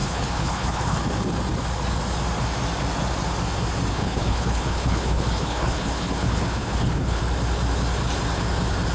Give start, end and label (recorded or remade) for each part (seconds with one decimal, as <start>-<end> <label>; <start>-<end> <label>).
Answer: 0.0-1.0 remade; 1.0-3.9 recorded; 3.9-7.2 remade; 7.2-8.9 recorded